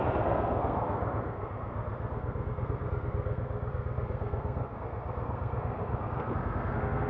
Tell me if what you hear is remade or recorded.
remade